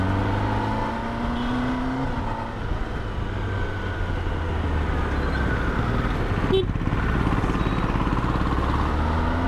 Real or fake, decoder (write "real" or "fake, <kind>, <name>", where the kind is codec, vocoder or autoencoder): real